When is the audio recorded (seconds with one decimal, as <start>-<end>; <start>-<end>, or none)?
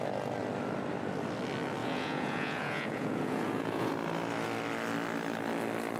0.0-1.8; 3.9-6.0